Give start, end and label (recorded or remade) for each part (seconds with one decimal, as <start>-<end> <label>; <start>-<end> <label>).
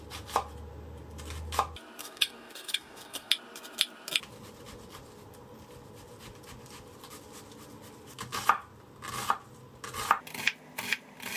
0.0-2.0 recorded; 2.0-3.3 remade; 3.3-11.4 recorded